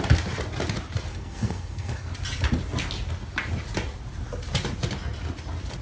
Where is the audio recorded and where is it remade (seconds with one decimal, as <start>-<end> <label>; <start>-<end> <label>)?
0.0-1.1 recorded; 1.1-2.1 remade; 2.1-5.8 recorded